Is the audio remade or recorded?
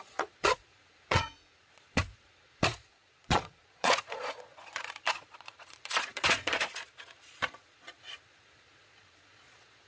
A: remade